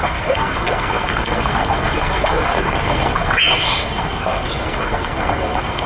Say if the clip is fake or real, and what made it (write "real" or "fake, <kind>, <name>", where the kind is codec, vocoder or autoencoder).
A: fake, codec, SNAC